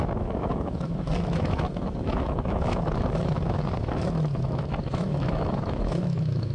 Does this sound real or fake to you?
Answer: fake